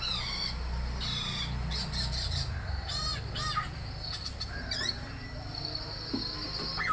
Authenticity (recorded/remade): recorded